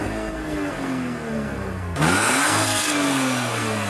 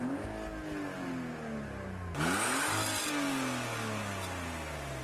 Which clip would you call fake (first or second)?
first